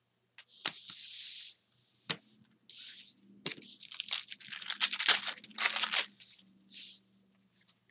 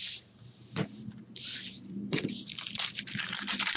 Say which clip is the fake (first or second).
second